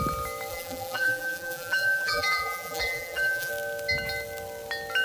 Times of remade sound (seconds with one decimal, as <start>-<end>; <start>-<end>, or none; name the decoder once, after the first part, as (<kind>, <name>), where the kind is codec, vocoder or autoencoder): 0.5-3.5 (vocoder, BigVGAN v2)